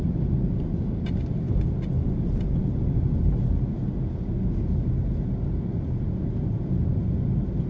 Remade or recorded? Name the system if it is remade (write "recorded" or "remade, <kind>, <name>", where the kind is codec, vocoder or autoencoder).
recorded